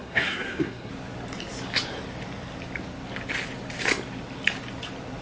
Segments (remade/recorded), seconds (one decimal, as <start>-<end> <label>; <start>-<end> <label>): 0.0-0.9 remade; 0.9-5.2 recorded